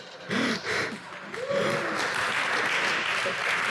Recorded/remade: recorded